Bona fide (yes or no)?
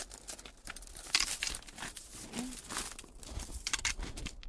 yes